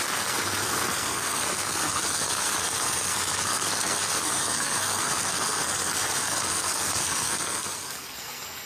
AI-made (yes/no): yes